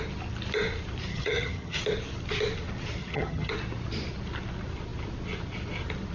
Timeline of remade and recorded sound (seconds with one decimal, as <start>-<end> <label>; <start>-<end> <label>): 0.0-1.1 recorded; 1.1-1.8 remade; 1.8-3.0 recorded; 3.0-3.5 remade; 3.5-6.1 recorded